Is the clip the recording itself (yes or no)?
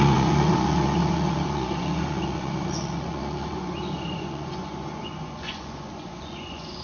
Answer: no